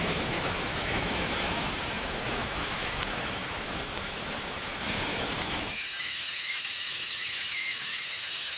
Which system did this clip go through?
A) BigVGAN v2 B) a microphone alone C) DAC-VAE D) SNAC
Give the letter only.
C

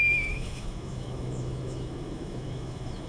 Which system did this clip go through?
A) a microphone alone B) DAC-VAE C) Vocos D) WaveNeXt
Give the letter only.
B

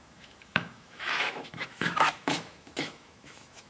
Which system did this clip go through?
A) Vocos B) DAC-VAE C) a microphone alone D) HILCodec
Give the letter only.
B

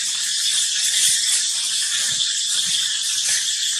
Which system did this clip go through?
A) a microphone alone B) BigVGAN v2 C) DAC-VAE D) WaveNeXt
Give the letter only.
A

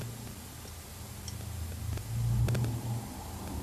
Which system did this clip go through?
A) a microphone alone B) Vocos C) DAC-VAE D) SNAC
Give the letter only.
A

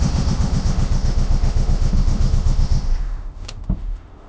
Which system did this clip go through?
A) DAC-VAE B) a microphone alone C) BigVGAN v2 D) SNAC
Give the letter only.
A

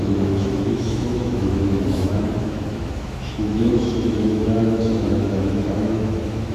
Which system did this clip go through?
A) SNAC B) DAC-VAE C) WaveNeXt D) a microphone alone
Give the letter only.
B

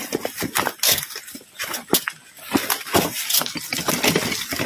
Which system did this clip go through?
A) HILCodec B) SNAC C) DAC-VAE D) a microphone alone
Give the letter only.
D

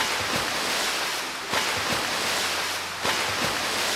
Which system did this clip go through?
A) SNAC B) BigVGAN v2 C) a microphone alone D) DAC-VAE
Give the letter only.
C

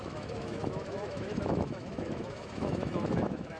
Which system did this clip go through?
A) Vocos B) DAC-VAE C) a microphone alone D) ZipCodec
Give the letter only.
B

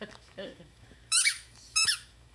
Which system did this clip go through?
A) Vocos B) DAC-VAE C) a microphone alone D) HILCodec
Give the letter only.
B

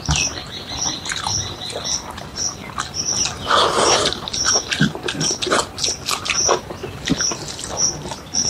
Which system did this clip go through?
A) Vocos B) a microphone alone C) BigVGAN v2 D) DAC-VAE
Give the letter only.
B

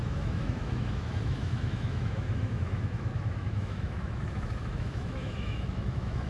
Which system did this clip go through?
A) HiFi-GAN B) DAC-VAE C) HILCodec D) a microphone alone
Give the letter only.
B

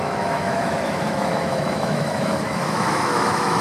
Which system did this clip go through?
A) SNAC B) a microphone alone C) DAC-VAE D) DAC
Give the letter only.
C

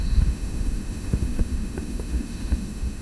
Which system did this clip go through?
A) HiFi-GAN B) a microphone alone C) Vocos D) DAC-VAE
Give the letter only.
D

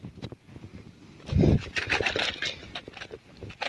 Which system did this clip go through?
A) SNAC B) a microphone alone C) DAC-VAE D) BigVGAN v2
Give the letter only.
B